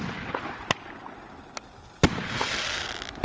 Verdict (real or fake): real